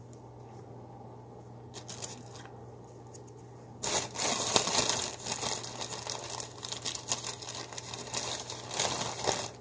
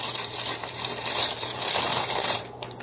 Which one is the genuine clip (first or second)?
first